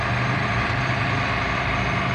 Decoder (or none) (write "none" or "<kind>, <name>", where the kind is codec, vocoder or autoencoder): none